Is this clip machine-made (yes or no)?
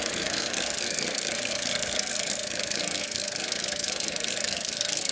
yes